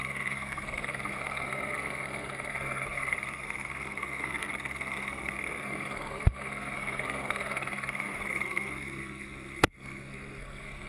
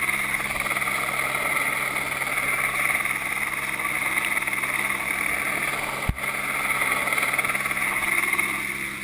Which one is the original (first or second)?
second